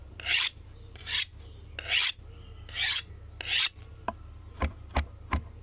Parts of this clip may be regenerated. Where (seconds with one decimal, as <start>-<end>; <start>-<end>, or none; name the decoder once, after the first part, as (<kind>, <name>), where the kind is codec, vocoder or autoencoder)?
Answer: 0.0-1.3 (vocoder, BigVGAN v2); 3.6-5.6